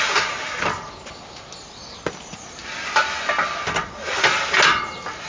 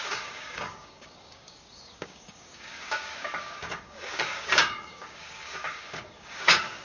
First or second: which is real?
first